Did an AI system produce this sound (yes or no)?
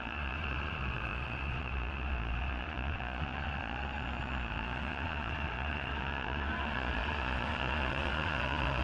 yes